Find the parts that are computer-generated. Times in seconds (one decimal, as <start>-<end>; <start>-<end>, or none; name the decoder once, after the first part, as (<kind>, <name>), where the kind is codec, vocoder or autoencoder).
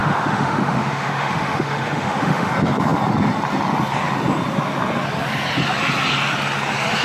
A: 0.0-2.5 (autoencoder, DAC-VAE)